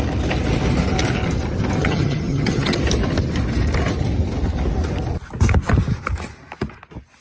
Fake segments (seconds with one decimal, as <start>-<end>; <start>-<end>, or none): 1.8-2.8